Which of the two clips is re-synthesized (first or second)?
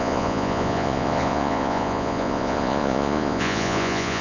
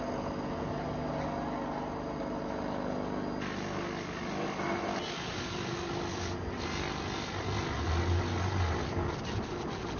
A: first